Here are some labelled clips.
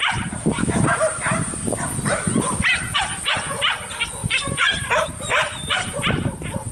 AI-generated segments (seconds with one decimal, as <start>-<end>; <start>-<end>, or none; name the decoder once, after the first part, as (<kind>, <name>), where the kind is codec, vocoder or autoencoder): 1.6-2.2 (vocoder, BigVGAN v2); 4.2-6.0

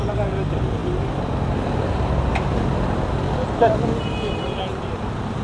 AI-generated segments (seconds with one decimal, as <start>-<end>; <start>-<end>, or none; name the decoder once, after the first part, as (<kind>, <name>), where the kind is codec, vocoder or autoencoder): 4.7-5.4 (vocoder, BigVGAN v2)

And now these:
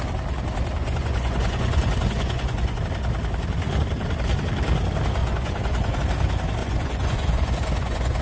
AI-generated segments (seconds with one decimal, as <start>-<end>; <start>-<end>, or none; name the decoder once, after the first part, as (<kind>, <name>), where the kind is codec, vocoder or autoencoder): 0.8-2.8 (vocoder, Vocos); 5.2-6.0; 6.6-8.2

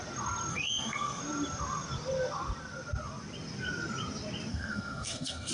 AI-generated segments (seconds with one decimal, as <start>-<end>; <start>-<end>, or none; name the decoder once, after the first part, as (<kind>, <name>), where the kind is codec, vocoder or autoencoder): 0.5-1.2 (codec, SNAC); 4.5-5.5

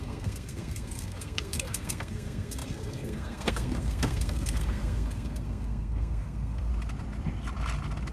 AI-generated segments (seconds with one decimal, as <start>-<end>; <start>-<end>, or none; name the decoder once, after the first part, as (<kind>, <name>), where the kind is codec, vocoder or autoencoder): 0.0-6.7 (codec, SNAC)

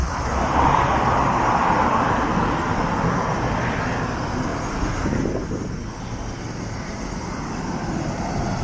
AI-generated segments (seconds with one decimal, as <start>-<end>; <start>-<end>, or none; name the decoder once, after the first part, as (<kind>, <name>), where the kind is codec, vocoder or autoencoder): 0.0-1.4 (vocoder, BigVGAN v2)